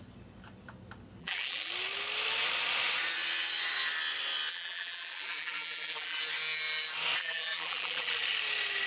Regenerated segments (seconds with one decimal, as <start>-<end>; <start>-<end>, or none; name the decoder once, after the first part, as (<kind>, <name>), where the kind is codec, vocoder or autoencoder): 1.2-1.7 (vocoder, BigVGAN v2); 4.5-6.2; 7.2-8.2